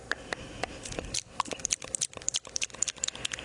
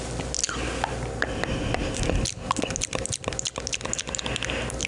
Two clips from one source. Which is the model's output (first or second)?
first